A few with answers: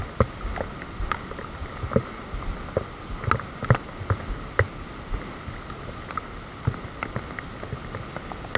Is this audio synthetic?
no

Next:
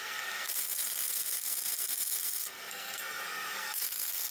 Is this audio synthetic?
yes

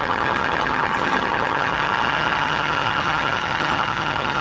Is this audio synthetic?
yes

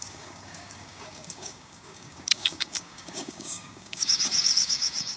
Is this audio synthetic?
yes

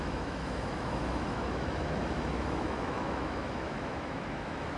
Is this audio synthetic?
yes